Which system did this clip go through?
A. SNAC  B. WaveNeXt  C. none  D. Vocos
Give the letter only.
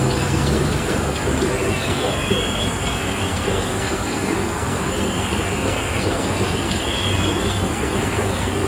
A